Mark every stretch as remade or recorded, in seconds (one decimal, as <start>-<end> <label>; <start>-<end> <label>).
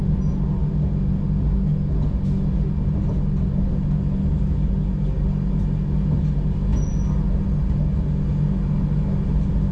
0.0-9.7 recorded